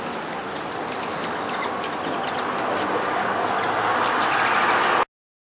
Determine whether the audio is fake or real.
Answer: real